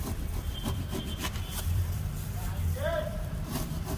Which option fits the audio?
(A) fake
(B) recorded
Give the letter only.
A